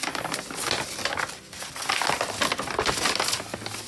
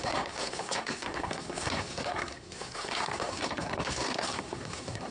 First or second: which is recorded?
first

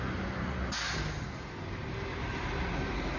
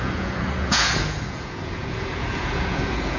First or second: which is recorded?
first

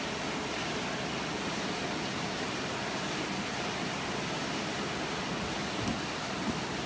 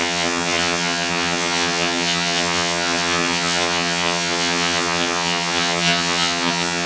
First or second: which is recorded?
first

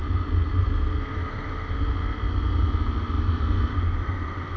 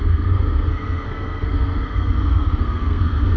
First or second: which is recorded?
first